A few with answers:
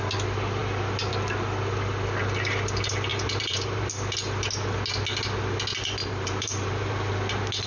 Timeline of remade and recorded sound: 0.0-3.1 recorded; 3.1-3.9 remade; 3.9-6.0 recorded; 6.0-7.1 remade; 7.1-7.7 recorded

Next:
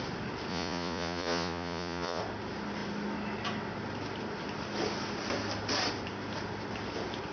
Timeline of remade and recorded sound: 0.0-0.5 recorded; 0.5-2.2 remade; 2.2-7.3 recorded

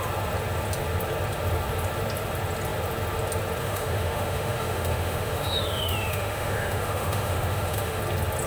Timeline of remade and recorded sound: 0.0-3.6 recorded; 3.6-8.0 remade; 8.0-8.5 recorded